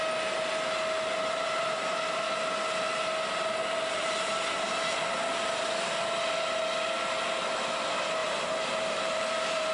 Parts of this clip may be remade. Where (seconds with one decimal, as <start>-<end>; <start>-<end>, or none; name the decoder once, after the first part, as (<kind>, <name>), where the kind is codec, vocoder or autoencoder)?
3.6-5.0 (vocoder, BigVGAN v2); 8.2-9.7